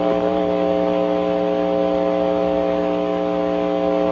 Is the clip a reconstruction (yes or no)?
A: no